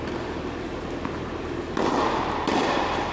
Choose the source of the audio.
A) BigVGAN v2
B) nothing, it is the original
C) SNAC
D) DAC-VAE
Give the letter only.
B